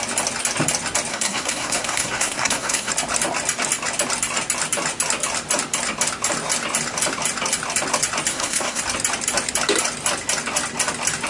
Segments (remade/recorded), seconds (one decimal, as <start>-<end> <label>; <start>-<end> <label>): 0.0-1.1 recorded; 1.1-2.9 remade; 2.9-8.3 recorded; 8.3-8.8 remade; 8.8-11.3 recorded